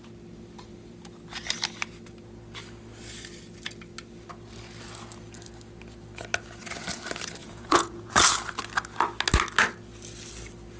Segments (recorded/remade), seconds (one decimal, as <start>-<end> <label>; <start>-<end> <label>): 0.0-7.4 recorded; 7.4-8.1 remade; 8.1-10.8 recorded